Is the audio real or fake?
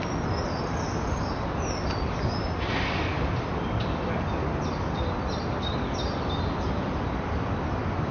real